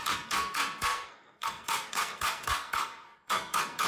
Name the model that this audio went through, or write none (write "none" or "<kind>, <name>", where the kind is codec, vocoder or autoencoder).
codec, SNAC